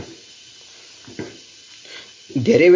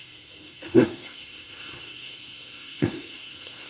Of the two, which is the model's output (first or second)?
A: second